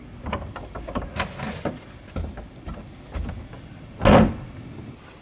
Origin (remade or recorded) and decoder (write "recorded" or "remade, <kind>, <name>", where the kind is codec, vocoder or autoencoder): recorded